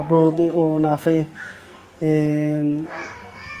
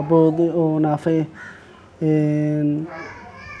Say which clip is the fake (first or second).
first